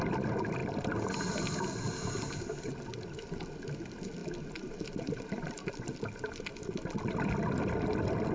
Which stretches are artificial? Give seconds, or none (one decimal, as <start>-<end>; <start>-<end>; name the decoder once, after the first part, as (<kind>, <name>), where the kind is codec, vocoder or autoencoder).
none